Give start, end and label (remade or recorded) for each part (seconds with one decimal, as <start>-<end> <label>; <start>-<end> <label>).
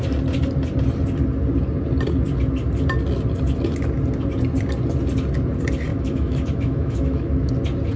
0.0-5.9 recorded; 5.9-7.5 remade; 7.5-8.0 recorded